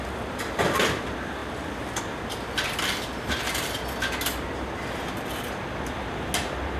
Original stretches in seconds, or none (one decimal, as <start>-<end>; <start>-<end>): 0.0-6.8